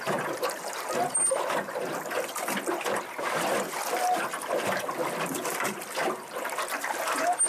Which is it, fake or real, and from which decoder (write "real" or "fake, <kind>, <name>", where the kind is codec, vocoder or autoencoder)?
real